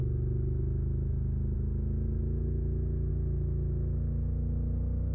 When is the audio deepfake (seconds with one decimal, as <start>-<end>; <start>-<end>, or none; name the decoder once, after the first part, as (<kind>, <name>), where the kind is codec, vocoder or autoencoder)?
none

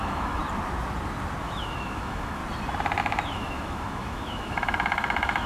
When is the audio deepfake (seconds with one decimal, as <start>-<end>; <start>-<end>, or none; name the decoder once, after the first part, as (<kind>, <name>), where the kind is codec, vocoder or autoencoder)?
0.0-0.4 (autoencoder, DAC-VAE); 1.4-2.4; 3.0-5.5

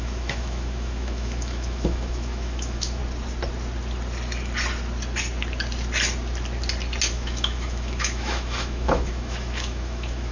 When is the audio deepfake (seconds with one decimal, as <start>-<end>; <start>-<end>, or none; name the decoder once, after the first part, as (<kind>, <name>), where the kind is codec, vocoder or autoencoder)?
0.0-3.0 (autoencoder, DAC-VAE); 7.1-10.3

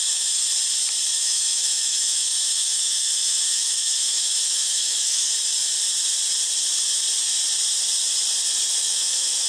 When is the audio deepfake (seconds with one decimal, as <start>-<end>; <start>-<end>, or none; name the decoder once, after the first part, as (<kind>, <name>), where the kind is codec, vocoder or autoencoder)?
0.0-0.5 (autoencoder, DAC-VAE); 1.1-5.3; 8.8-9.5

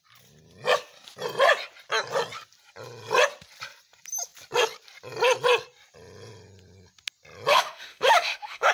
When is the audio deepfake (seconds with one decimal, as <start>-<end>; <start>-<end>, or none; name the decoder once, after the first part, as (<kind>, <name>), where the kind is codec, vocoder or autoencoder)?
7.5-8.7 (autoencoder, DAC-VAE)

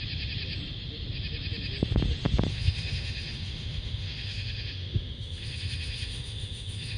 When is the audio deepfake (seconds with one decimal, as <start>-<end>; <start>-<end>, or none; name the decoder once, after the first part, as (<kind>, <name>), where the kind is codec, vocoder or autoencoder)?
2.5-7.0 (autoencoder, DAC-VAE)